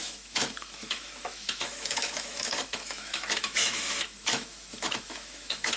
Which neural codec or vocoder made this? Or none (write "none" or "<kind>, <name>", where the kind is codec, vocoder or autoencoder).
autoencoder, DAC-VAE